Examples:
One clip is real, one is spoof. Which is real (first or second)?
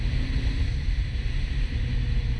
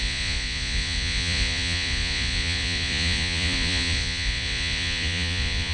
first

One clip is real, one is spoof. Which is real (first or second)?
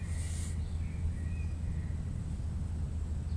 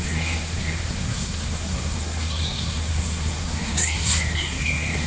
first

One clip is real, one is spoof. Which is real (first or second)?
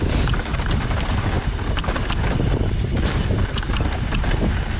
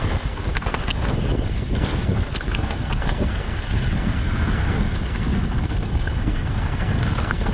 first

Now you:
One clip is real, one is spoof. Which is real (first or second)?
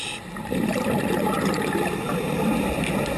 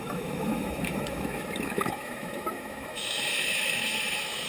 first